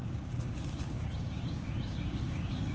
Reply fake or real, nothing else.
fake